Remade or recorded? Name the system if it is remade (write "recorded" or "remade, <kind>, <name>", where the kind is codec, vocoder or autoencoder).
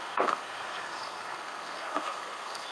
remade, codec, SNAC